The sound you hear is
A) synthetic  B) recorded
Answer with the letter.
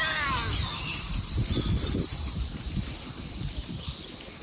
B